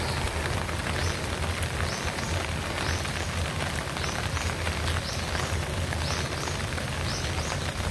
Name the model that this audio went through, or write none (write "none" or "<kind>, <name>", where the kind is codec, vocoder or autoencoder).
none